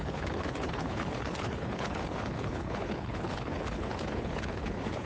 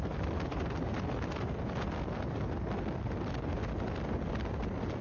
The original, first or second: second